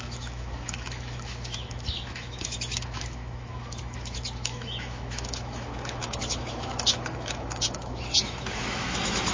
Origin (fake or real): fake